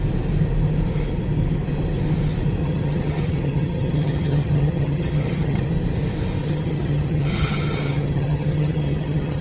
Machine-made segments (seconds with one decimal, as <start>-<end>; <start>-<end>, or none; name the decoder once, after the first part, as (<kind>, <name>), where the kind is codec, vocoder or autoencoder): 2.6-5.6 (vocoder, HiFi-GAN); 6.4-9.4